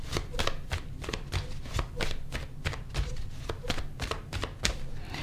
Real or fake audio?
real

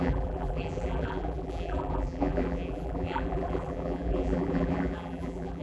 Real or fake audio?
fake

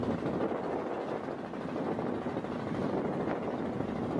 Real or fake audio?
real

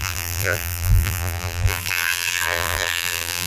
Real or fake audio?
fake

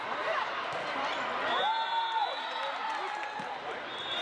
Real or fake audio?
real